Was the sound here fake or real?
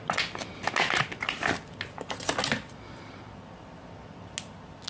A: real